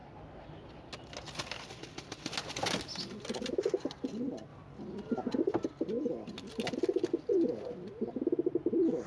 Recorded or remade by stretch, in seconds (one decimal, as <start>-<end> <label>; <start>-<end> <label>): 0.0-9.1 recorded